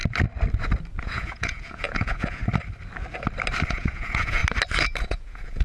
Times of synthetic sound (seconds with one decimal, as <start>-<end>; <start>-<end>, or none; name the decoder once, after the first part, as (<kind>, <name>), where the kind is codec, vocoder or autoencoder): 1.0-2.4 (vocoder, Vocos); 3.7-4.4; 5.0-5.6